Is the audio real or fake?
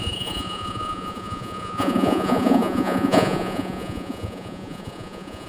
fake